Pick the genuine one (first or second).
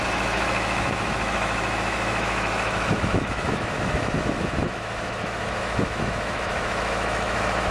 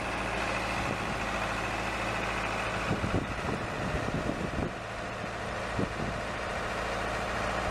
second